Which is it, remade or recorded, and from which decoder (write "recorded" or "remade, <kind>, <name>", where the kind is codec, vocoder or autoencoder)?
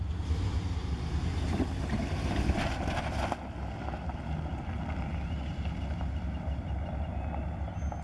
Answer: recorded